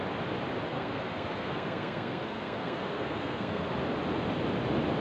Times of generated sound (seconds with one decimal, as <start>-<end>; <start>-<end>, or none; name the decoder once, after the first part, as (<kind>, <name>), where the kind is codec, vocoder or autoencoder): 0.7-3.7 (codec, SNAC)

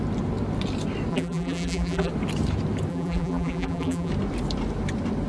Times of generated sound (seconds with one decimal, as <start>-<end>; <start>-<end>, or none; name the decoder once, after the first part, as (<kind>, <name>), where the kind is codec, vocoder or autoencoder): 1.1-2.1 (vocoder, BigVGAN v2); 2.9-4.1

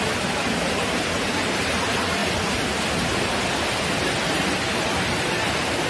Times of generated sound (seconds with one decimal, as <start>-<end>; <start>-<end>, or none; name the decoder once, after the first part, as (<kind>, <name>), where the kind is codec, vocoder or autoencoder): none

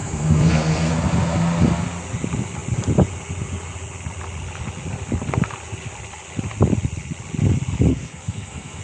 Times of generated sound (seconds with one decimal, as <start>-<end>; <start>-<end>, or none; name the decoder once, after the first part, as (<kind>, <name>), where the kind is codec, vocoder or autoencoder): 0.0-0.9 (codec, SNAC); 7.9-8.8